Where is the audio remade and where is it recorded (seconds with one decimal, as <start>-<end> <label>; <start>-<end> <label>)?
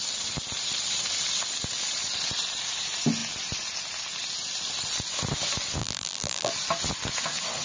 0.0-5.8 recorded; 5.8-6.5 remade; 6.5-7.6 recorded